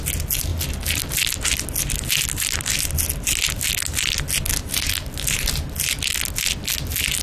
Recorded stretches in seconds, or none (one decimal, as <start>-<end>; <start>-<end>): 0.0-7.2